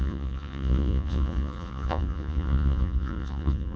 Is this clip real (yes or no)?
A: no